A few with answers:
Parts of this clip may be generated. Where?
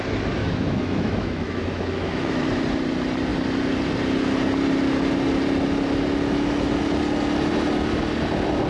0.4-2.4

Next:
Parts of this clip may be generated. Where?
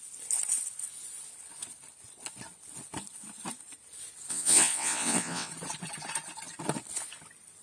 4.3-5.5